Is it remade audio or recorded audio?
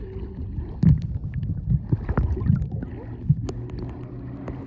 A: recorded